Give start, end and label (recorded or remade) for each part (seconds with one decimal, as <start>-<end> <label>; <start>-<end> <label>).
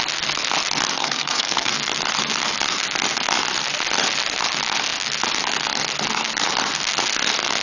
0.0-1.0 recorded; 1.0-1.7 remade; 1.7-7.6 recorded